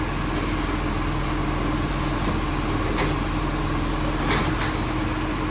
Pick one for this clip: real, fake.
real